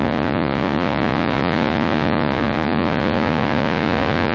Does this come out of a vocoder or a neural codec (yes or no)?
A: yes